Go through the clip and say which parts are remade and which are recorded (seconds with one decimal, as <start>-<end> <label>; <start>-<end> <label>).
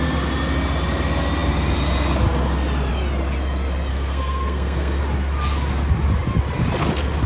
0.0-3.9 recorded; 3.9-5.0 remade; 5.0-7.3 recorded